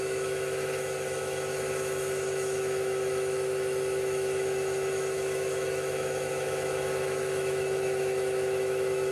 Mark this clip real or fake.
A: fake